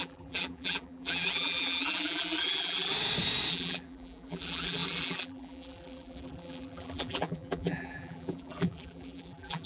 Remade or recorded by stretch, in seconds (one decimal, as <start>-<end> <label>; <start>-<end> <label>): 0.0-2.9 remade; 2.9-3.5 recorded; 3.5-9.7 remade